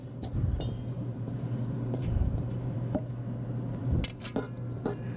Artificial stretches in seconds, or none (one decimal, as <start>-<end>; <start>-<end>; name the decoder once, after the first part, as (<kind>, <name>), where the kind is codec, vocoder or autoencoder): 0.0-3.1 (vocoder, BigVGAN v2)